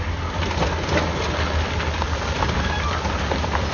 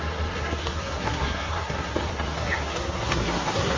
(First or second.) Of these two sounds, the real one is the first